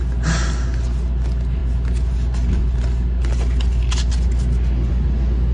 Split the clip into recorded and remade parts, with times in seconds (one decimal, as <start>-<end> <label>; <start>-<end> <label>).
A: 0.0-5.5 recorded

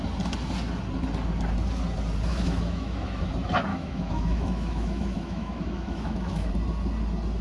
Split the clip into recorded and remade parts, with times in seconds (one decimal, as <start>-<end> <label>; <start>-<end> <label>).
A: 0.0-2.3 recorded; 2.3-3.3 remade; 3.3-3.7 recorded; 3.7-6.5 remade; 6.5-7.4 recorded

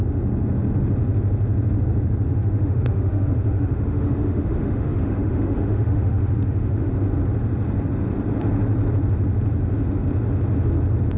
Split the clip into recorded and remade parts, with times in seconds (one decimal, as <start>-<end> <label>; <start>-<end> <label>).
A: 0.0-2.3 recorded; 2.3-6.9 remade; 6.9-11.2 recorded

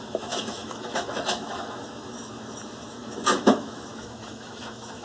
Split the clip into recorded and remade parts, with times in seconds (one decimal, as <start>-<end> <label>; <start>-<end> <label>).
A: 0.0-5.0 remade

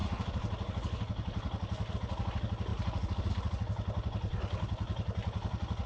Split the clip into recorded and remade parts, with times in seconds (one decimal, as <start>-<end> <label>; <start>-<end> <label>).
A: 0.0-5.9 recorded

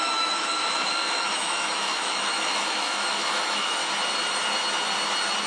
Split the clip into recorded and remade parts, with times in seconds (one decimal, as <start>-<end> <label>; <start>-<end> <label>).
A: 0.0-3.8 remade; 3.8-5.5 recorded